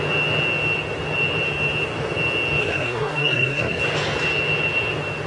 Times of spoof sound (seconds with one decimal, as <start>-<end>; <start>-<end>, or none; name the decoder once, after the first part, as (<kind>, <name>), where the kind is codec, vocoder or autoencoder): 2.6-3.8 (codec, SNAC)